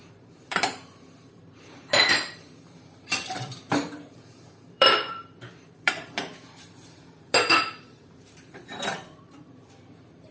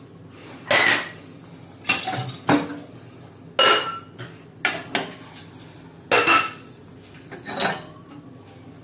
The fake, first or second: first